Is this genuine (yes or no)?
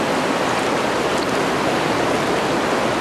yes